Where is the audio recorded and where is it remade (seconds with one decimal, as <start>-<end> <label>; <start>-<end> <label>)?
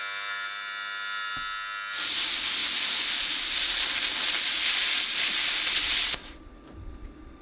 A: 0.0-7.4 recorded